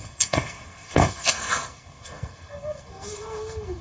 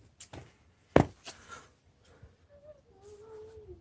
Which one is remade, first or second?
first